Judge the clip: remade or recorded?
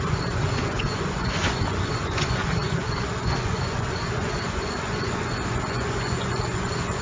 remade